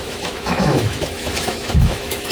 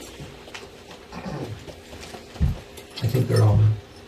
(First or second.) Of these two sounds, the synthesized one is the first